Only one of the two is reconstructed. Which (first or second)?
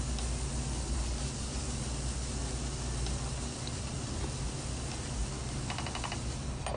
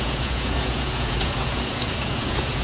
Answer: second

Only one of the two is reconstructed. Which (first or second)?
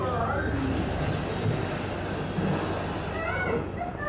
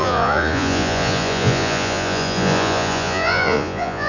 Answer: second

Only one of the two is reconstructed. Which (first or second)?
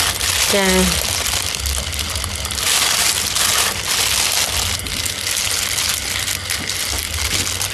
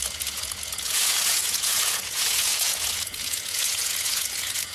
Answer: second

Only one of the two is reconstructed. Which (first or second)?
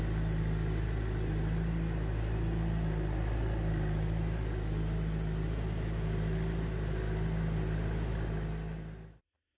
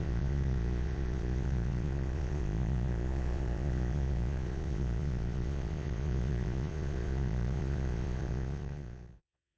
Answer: second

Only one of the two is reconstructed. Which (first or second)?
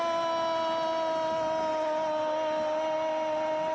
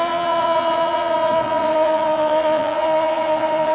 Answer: second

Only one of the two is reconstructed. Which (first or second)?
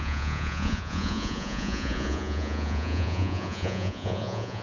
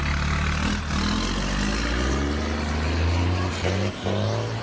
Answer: first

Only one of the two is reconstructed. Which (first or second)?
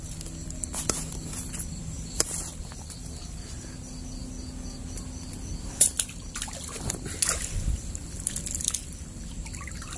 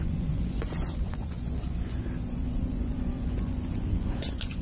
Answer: second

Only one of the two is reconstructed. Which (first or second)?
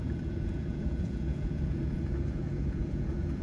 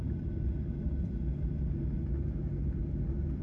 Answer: first